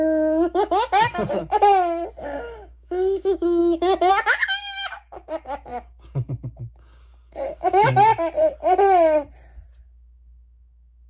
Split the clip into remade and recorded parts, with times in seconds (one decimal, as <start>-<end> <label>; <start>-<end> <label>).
0.0-1.4 remade; 1.4-2.2 recorded; 2.2-8.1 remade; 8.1-9.8 recorded; 9.8-11.1 remade